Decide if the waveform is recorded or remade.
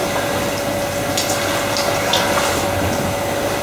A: recorded